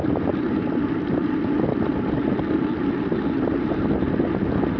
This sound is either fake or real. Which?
real